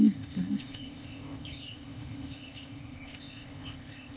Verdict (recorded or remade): remade